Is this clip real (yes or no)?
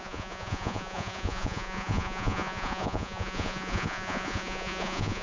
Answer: no